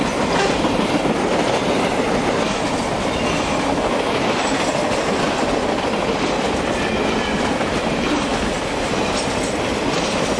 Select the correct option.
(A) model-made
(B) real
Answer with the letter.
B